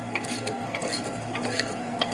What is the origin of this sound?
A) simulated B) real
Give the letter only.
A